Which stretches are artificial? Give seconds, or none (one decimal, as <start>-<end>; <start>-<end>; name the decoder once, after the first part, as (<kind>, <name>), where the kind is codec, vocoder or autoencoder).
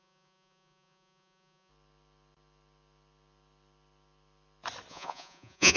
0.0-1.7 (vocoder, Vocos); 4.9-5.8